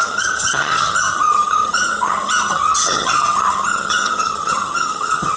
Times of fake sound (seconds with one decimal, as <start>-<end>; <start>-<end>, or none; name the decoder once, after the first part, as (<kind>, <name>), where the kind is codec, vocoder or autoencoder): 0.0-5.4 (vocoder, HiFi-GAN)